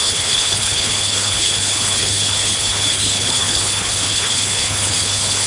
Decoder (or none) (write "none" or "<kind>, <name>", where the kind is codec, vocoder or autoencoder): codec, HILCodec